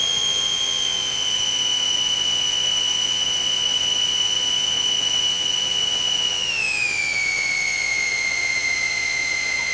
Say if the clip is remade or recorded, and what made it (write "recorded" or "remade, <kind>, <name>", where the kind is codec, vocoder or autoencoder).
remade, vocoder, Vocos